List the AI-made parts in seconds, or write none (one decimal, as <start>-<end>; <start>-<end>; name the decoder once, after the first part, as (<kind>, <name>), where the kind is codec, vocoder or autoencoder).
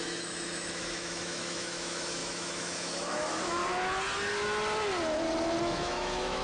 0.0-3.6 (autoencoder, DAC-VAE); 5.6-6.4